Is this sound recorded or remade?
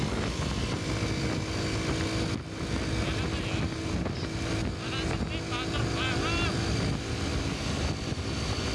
recorded